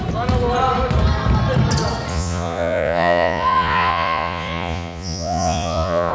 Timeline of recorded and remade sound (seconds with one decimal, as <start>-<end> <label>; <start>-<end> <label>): 0.0-2.1 recorded; 2.1-6.1 remade